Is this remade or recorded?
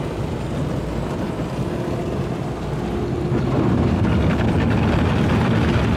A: recorded